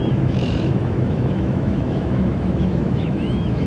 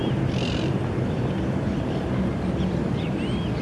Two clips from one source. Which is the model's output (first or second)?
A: first